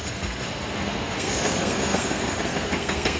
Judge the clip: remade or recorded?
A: remade